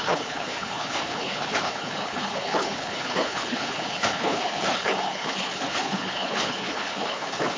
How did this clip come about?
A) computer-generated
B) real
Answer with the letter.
A